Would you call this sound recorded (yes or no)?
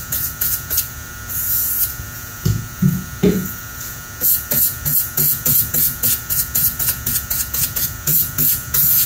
no